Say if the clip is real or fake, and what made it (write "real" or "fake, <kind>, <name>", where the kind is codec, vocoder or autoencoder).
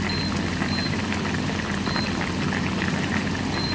real